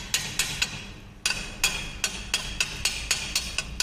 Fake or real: real